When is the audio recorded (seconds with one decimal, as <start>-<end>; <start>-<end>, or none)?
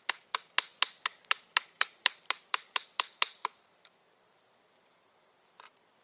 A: 0.0-1.1; 4.6-6.0